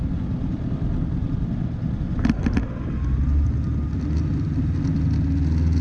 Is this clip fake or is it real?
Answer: real